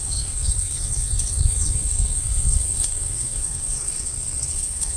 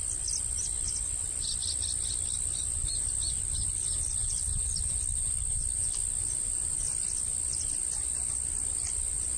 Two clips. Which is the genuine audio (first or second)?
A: second